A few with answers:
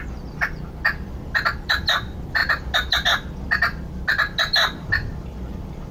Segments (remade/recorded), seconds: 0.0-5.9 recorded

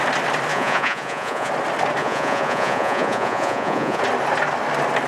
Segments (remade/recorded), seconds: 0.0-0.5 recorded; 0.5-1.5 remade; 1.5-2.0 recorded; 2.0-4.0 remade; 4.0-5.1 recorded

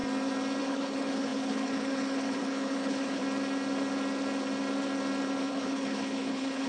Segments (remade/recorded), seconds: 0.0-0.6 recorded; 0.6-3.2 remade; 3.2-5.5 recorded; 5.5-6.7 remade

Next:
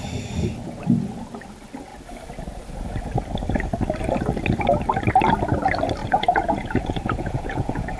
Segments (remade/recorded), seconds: 0.0-6.0 recorded; 6.0-8.0 remade

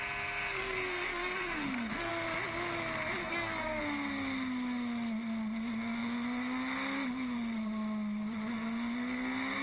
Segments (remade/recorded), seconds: 0.0-0.5 recorded; 0.5-2.1 remade; 2.1-3.2 recorded; 3.2-3.8 remade; 3.8-9.6 recorded